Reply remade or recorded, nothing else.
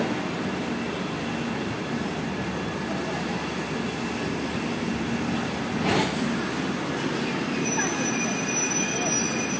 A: recorded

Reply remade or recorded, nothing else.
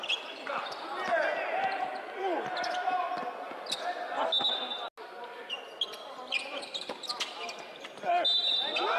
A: recorded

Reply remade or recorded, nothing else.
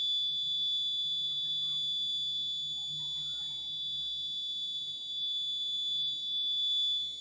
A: recorded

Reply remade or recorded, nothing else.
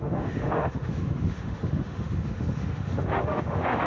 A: remade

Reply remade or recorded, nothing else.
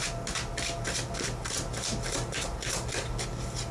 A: recorded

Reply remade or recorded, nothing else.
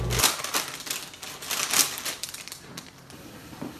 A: recorded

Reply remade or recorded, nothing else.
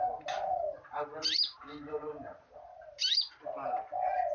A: recorded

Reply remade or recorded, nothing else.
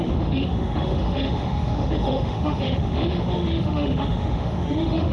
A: remade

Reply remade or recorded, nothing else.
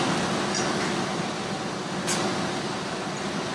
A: recorded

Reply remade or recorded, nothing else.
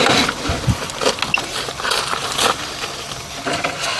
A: recorded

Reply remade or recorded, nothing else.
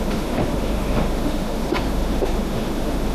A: remade